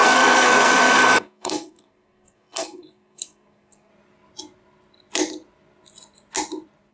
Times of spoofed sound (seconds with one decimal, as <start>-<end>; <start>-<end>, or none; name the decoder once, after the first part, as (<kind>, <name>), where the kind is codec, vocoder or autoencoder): 0.0-3.9 (codec, SNAC)